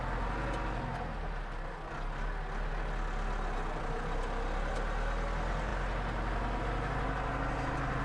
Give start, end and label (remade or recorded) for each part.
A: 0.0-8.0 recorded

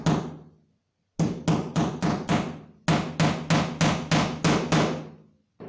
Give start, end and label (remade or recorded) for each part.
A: 0.0-1.6 recorded; 1.6-2.3 remade; 2.3-5.7 recorded